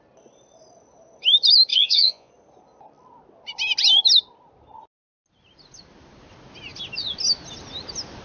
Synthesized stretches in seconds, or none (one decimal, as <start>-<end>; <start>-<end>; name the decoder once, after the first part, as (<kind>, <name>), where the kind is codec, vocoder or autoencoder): 1.7-2.3 (vocoder, Vocos)